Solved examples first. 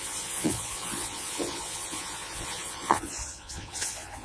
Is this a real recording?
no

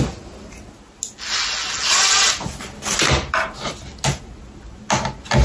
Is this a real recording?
yes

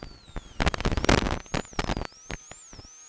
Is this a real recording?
yes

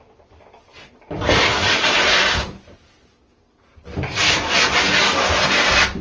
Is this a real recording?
yes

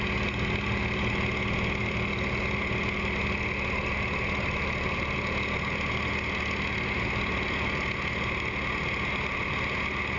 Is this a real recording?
yes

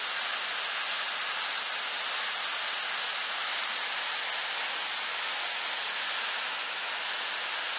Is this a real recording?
yes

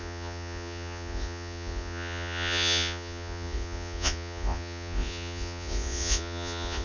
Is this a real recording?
no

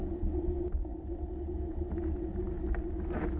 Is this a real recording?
yes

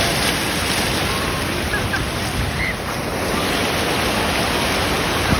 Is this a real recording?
yes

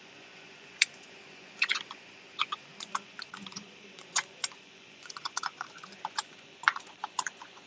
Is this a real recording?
no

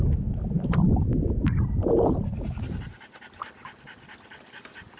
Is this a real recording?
yes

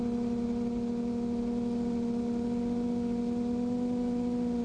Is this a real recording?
yes